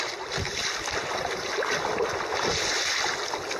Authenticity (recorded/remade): recorded